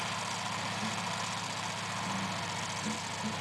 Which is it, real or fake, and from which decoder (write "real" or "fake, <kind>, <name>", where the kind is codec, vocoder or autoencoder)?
real